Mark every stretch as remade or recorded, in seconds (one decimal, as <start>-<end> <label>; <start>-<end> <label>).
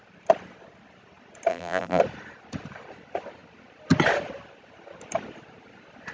0.0-1.5 recorded; 1.5-2.0 remade; 2.0-6.1 recorded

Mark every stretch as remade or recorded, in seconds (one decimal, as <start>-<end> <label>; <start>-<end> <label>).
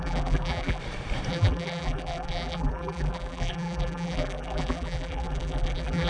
0.0-0.8 remade; 0.8-1.3 recorded; 1.3-6.1 remade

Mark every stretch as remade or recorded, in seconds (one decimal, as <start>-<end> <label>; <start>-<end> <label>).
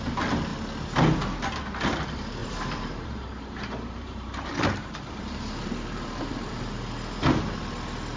0.0-2.4 recorded; 2.4-6.7 remade; 6.7-8.2 recorded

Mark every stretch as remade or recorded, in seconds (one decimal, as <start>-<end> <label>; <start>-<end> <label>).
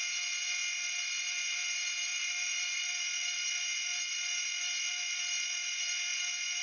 0.0-2.1 recorded; 2.1-2.9 remade; 2.9-6.6 recorded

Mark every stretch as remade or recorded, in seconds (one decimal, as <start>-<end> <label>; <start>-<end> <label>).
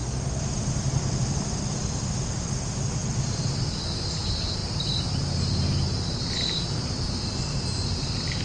0.0-4.6 remade; 4.6-6.2 recorded; 6.2-8.4 remade